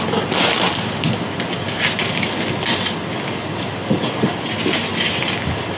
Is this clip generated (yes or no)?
no